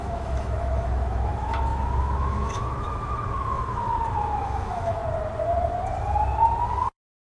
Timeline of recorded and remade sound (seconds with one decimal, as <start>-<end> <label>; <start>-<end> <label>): 0.0-5.0 remade; 5.0-6.8 recorded; 6.8-7.2 remade